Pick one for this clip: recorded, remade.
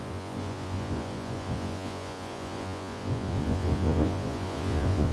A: remade